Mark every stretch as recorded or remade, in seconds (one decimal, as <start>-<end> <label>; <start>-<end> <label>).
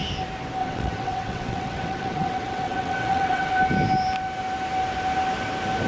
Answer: 0.0-0.6 recorded; 0.6-3.5 remade; 3.5-5.9 recorded